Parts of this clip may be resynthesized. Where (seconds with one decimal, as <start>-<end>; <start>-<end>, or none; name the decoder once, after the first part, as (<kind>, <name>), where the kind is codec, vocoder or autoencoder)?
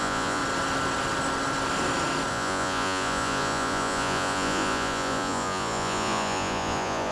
0.0-0.4 (vocoder, Vocos); 2.3-7.1